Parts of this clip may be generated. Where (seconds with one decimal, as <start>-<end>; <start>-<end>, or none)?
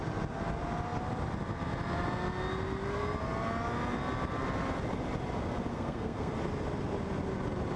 5.7-6.3